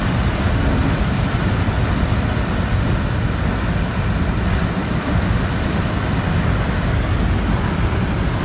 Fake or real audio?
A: real